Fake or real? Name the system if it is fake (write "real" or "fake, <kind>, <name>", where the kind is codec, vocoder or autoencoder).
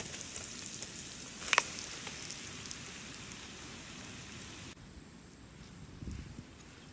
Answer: real